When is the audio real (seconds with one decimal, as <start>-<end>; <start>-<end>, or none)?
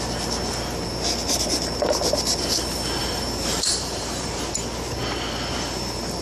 0.0-3.0; 4.4-6.2